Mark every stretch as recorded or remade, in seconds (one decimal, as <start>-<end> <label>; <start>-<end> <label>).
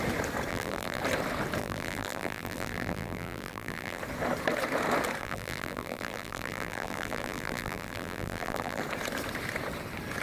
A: 0.0-0.5 recorded; 0.5-1.0 remade; 1.0-1.6 recorded; 1.6-4.0 remade; 4.0-5.2 recorded; 5.2-8.8 remade; 8.8-10.2 recorded